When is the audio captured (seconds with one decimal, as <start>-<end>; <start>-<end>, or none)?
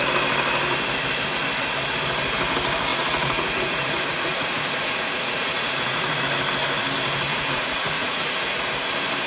0.0-2.9; 6.2-7.3; 8.5-9.3